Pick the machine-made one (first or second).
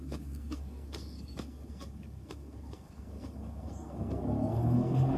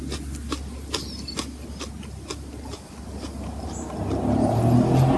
first